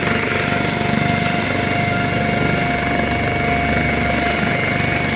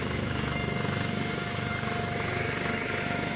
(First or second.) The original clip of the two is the first